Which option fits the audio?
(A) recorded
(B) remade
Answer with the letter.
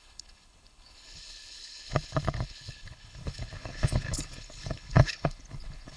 B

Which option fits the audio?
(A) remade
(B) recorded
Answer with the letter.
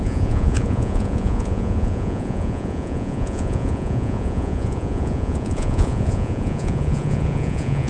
A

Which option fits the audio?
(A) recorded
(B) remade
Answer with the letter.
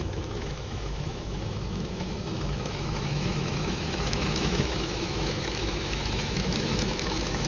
B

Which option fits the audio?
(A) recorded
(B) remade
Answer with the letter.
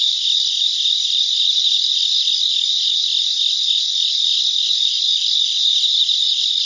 A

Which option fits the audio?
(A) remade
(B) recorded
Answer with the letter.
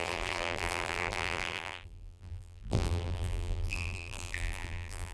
A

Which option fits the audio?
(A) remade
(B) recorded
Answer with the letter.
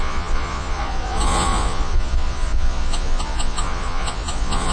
A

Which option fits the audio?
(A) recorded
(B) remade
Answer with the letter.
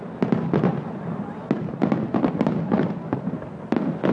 A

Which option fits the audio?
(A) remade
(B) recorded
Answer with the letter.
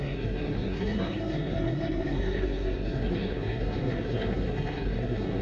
A